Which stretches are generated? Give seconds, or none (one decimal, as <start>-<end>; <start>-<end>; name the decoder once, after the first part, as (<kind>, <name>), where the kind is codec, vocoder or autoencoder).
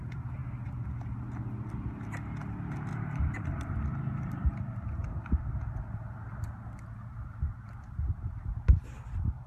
2.9-5.8 (vocoder, BigVGAN v2)